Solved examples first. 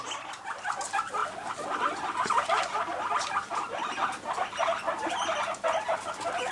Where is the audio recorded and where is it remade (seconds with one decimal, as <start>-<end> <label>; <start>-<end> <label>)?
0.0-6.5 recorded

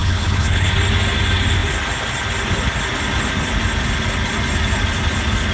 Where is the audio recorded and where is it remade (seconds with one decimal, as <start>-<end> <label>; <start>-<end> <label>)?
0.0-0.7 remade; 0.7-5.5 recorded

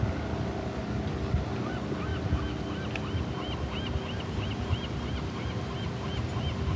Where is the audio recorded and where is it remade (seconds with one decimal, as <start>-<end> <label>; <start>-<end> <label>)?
0.0-6.8 recorded

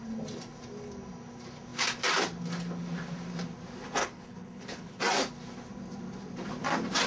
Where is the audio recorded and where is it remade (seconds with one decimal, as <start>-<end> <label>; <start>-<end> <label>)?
0.0-4.0 recorded; 4.0-5.0 remade; 5.0-7.1 recorded

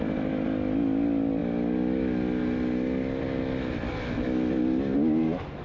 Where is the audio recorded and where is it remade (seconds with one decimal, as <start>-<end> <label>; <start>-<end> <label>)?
0.0-5.6 recorded

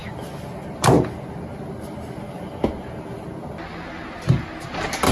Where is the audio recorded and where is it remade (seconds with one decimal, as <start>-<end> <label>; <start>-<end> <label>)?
0.0-5.1 recorded